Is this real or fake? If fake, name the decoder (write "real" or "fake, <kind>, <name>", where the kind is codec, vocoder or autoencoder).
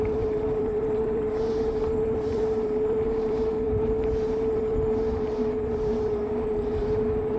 fake, vocoder, BigVGAN v2